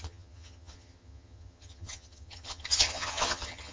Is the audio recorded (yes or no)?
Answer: no